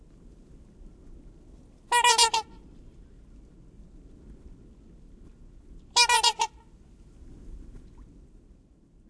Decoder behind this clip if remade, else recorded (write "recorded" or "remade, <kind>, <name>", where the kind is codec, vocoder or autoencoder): recorded